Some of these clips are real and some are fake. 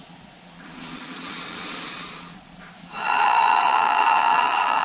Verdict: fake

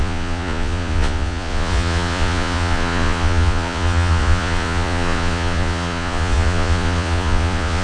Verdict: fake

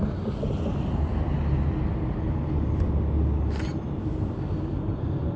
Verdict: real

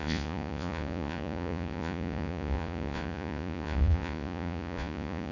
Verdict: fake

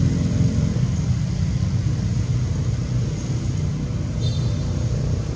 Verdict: real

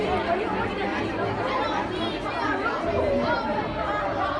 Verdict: real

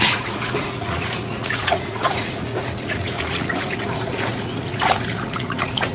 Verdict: fake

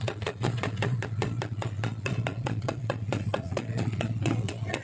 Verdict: fake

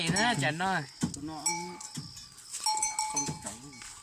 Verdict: real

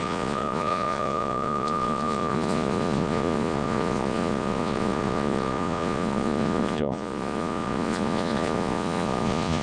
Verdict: fake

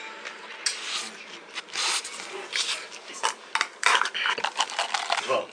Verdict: real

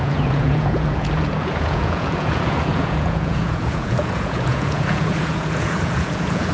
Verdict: fake